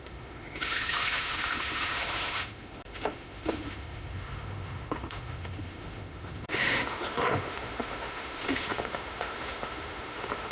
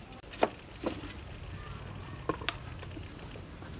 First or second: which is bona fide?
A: second